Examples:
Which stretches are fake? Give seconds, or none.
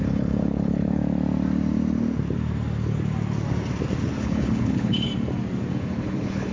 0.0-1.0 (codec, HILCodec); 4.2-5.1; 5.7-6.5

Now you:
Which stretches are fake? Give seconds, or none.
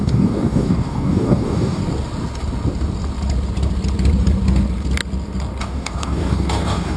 0.0-1.8 (codec, DAC); 5.6-7.0